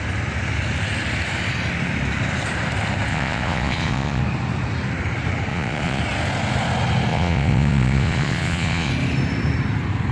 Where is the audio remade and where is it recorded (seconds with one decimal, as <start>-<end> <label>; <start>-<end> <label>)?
0.0-3.1 recorded; 3.1-4.2 remade; 4.2-5.5 recorded; 5.5-6.0 remade; 6.0-7.1 recorded; 7.1-8.9 remade; 8.9-10.1 recorded

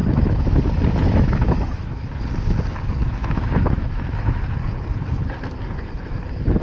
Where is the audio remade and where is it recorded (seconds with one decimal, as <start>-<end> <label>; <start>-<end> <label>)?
0.0-0.6 remade; 0.6-1.0 recorded; 1.0-2.1 remade; 2.1-3.2 recorded; 3.2-4.4 remade; 4.4-6.6 recorded

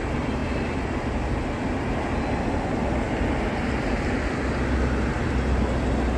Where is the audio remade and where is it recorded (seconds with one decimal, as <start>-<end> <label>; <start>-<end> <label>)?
0.0-6.2 recorded

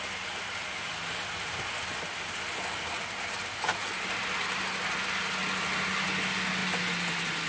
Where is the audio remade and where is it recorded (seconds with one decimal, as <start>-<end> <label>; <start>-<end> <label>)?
0.0-7.5 recorded

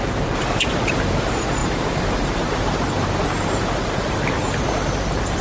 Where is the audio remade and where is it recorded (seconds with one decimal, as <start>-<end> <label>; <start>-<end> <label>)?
0.0-5.4 remade

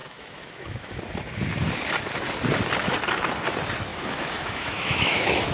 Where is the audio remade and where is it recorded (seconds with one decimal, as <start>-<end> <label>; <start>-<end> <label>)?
0.0-1.0 remade; 1.0-3.9 recorded; 3.9-5.5 remade

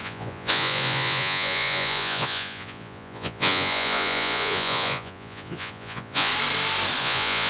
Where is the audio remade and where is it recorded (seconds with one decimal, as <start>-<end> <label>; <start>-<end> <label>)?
0.0-6.3 remade; 6.3-7.0 recorded; 7.0-7.5 remade